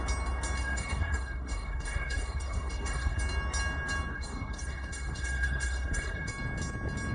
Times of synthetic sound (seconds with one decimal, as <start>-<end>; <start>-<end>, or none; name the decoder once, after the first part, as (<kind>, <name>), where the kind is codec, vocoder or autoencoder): 0.6-3.2 (codec, SNAC); 4.1-6.3